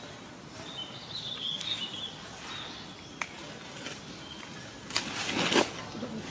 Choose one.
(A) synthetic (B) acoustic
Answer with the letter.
B